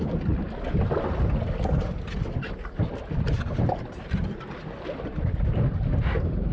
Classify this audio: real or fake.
real